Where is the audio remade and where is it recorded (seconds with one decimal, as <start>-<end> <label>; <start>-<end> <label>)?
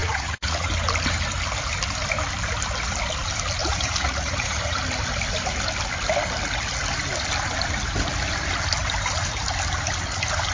0.0-0.7 remade; 0.7-3.6 recorded; 3.6-4.8 remade; 4.8-10.5 recorded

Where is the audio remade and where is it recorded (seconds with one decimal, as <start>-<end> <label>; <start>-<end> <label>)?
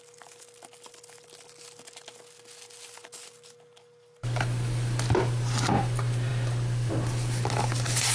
0.0-8.1 recorded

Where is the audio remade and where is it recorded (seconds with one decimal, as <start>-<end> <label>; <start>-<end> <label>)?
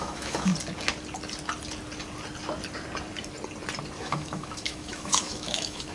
0.0-0.5 remade; 0.5-4.0 recorded; 4.0-5.9 remade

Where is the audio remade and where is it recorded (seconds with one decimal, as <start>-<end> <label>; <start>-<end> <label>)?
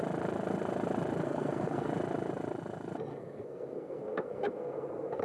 0.0-1.2 recorded; 1.2-1.9 remade; 1.9-3.1 recorded; 3.1-5.2 remade